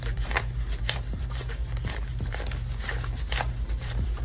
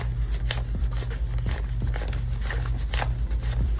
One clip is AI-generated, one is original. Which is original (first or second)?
second